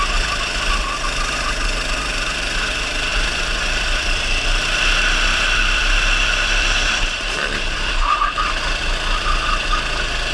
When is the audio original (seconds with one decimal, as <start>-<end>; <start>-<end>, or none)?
0.0-3.1; 7.9-10.3